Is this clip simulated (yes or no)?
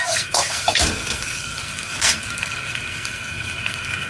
yes